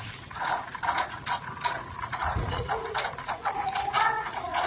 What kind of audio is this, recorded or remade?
remade